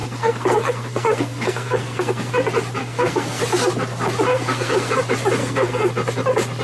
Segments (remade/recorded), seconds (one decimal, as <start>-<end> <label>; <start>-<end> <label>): 0.0-2.3 remade; 2.3-2.8 recorded; 2.8-3.4 remade; 3.4-4.3 recorded; 4.3-5.0 remade; 5.0-5.4 recorded; 5.4-5.9 remade; 5.9-6.6 recorded